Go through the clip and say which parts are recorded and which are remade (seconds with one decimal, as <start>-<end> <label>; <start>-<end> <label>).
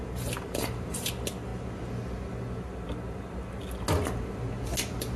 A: 0.0-1.1 remade; 1.1-5.2 recorded